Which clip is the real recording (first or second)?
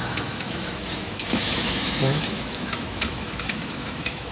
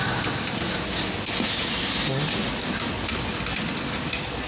second